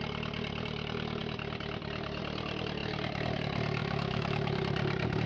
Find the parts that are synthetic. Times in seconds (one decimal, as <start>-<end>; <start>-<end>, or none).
3.8-4.6